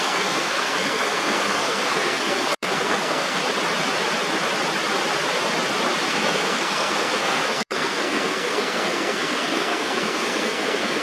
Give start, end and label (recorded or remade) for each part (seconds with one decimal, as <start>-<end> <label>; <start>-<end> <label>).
0.0-3.4 remade; 3.4-6.1 recorded; 6.1-11.0 remade